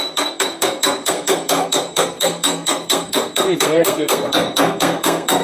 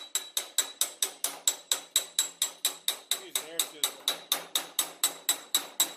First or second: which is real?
second